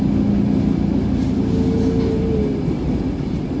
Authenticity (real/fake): real